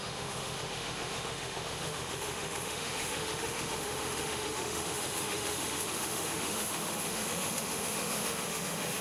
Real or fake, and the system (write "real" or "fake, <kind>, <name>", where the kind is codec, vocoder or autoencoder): fake, autoencoder, DAC-VAE